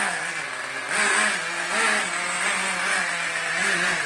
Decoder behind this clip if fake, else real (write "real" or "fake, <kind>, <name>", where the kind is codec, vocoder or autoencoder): real